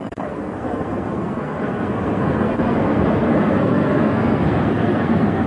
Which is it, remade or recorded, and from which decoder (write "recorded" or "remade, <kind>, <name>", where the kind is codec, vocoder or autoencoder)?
remade, codec, SNAC